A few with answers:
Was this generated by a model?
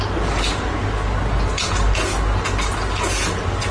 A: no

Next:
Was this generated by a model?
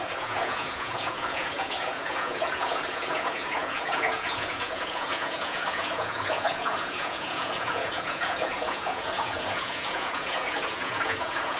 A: yes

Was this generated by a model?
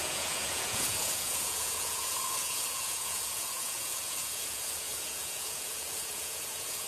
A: yes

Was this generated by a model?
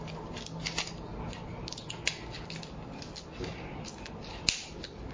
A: no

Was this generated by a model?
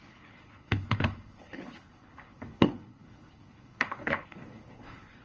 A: yes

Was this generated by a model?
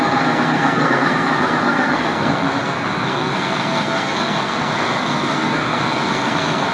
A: yes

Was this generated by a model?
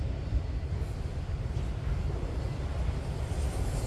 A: no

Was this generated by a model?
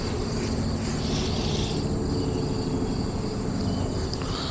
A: no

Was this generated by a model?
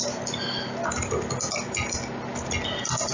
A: no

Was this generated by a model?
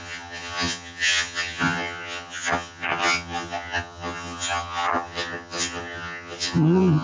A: yes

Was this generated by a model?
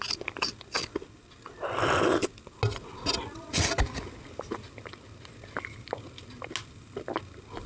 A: no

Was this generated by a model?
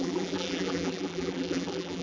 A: yes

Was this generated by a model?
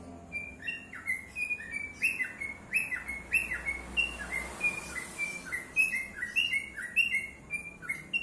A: no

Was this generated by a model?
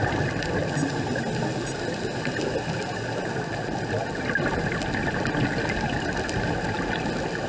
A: no